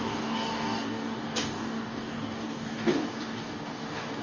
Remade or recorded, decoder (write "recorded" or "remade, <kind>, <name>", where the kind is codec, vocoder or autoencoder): remade, codec, DAC